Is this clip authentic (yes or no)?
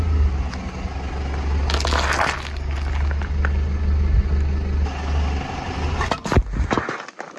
yes